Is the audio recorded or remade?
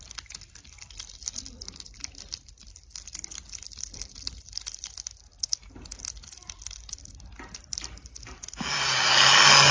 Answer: recorded